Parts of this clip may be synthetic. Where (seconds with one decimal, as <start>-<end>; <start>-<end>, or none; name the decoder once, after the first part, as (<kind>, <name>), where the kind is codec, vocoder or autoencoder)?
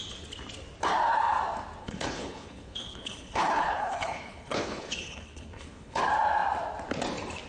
1.8-6.0 (codec, HILCodec)